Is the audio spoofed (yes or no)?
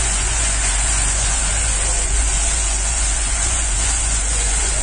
yes